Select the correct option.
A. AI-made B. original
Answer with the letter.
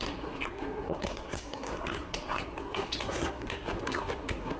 A